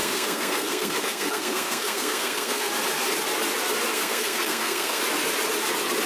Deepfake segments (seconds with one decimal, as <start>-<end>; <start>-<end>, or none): 0.0-2.7; 3.9-5.0

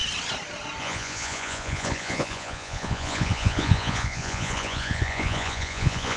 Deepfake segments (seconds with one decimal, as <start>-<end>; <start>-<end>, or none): 0.8-6.2

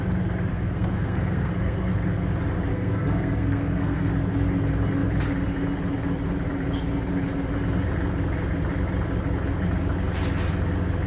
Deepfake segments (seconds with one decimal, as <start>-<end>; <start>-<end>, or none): 0.5-1.9; 2.7-4.1

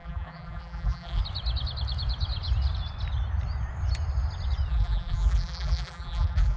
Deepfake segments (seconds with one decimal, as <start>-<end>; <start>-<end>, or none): 0.0-1.2; 4.7-6.6

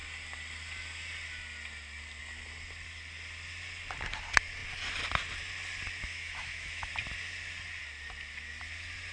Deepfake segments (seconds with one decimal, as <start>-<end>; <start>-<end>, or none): 6.0-6.9

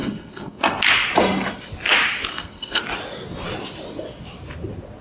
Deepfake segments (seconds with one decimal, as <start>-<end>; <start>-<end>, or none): 0.0-0.6; 2.3-2.8

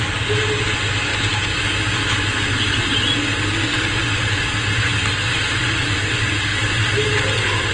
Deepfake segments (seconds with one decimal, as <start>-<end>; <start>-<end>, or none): none